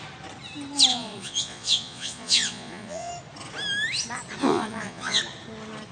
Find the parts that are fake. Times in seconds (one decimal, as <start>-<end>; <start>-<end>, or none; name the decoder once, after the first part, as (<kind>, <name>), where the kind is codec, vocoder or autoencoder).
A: 0.9-3.1 (vocoder, Vocos); 4.4-5.2